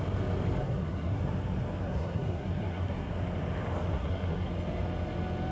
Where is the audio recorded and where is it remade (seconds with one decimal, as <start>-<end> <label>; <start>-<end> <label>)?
0.0-0.6 recorded; 0.6-1.2 remade; 1.2-1.8 recorded; 1.8-3.1 remade; 3.1-3.9 recorded; 3.9-4.5 remade; 4.5-5.5 recorded